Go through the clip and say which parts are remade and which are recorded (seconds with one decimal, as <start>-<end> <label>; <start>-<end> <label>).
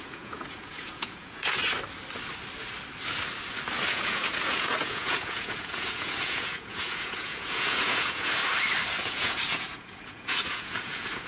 0.0-1.6 remade; 1.6-3.9 recorded; 3.9-8.4 remade; 8.4-9.0 recorded; 9.0-11.3 remade